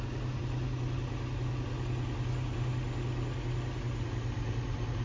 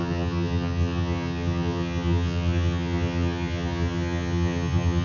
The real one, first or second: first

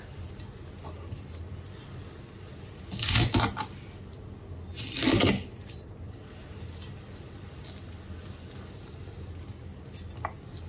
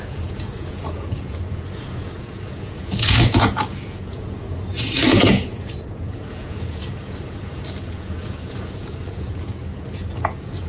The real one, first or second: first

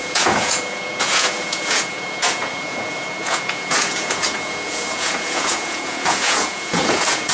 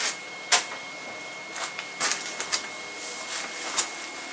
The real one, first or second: second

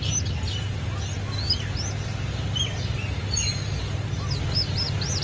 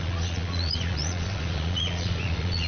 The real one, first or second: first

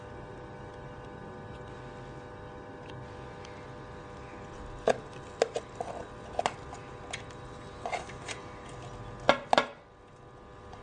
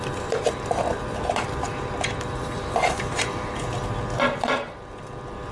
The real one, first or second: first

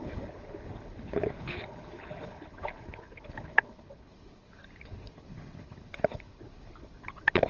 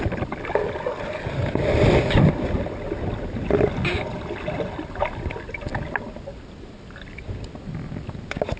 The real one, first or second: second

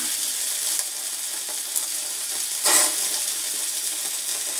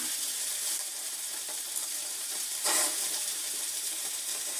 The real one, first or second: first